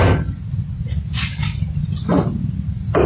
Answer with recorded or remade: recorded